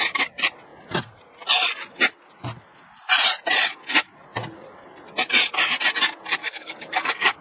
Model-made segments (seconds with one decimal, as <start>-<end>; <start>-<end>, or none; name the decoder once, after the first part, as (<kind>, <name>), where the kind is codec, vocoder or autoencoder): 6.4-7.4 (codec, DAC)